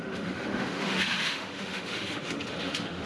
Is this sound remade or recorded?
remade